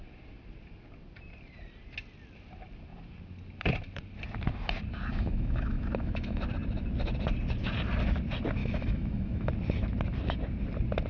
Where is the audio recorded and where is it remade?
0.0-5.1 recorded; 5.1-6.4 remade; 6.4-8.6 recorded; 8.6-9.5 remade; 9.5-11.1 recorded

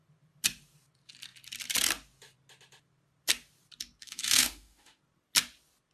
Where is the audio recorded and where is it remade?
0.0-4.0 recorded; 4.0-5.0 remade; 5.0-5.9 recorded